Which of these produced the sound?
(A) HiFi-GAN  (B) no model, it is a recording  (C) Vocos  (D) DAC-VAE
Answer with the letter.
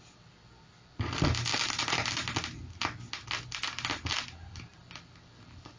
B